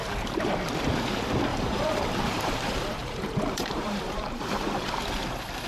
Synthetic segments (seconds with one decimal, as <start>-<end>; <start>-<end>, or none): 1.5-4.9